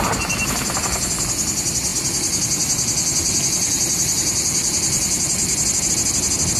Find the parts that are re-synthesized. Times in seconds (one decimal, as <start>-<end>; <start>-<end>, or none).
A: none